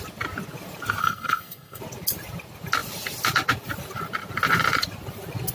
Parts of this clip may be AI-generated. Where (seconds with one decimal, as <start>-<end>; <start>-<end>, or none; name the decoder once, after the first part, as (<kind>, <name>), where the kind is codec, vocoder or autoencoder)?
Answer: 1.0-1.8 (codec, SNAC)